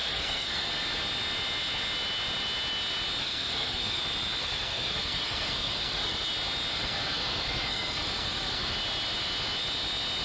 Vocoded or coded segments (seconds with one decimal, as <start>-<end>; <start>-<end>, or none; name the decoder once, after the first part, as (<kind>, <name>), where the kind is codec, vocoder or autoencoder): 0.0-0.7 (codec, SNAC); 3.2-4.0; 4.4-6.3; 6.7-8.7